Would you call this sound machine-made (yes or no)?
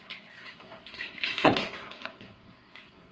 yes